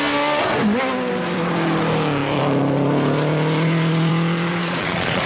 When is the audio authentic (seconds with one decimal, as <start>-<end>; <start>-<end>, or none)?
0.0-4.6